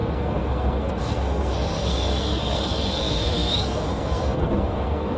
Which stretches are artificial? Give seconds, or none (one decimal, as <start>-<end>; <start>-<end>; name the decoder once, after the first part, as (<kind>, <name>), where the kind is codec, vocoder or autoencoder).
0.0-5.2 (codec, SNAC)